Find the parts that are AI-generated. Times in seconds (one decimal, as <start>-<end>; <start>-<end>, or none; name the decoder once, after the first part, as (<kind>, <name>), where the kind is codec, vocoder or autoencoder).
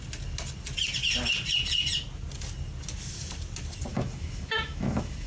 3.9-5.3 (autoencoder, DAC-VAE)